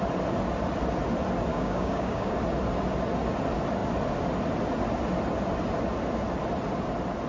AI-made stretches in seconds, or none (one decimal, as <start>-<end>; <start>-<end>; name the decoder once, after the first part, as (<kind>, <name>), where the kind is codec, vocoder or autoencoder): 1.5-2.3 (codec, DAC)